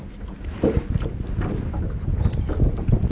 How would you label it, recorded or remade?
recorded